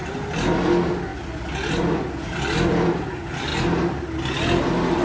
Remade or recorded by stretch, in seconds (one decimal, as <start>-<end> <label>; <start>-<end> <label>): 0.0-5.0 recorded